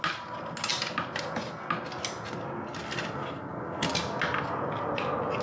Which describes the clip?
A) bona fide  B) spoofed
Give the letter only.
A